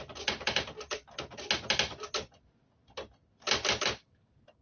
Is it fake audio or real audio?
real